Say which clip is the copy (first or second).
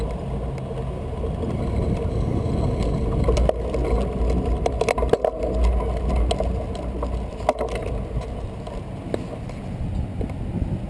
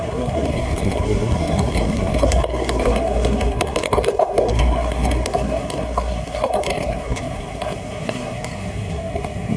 second